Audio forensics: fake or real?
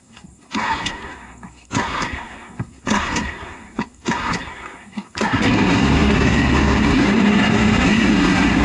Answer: fake